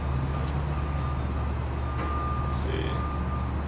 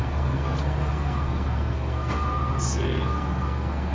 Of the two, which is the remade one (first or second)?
second